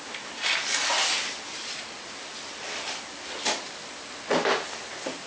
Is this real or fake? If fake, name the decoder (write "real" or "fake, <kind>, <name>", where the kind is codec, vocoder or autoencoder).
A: real